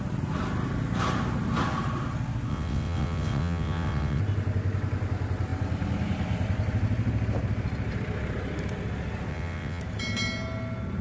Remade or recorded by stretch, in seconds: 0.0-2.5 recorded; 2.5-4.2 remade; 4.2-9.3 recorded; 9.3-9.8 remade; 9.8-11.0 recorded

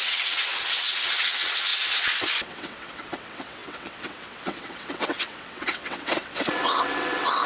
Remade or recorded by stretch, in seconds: 0.0-7.5 remade

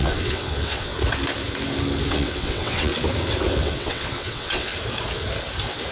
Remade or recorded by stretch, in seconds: 0.0-0.9 remade; 0.9-2.1 recorded; 2.1-2.9 remade; 2.9-3.5 recorded; 3.5-4.7 remade; 4.7-5.9 recorded

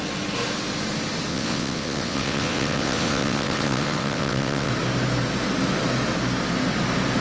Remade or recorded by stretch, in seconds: 0.0-1.3 recorded; 1.3-4.7 remade; 4.7-7.2 recorded